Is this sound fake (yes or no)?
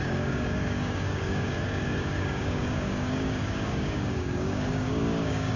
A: yes